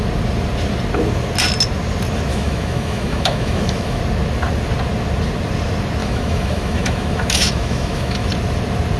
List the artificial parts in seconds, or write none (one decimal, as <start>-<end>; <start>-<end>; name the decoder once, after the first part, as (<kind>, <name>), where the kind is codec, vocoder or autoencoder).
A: 2.3-4.0 (autoencoder, DAC-VAE); 6.0-8.3